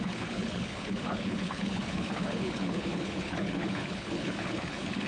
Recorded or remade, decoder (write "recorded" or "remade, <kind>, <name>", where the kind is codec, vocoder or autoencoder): remade, codec, HILCodec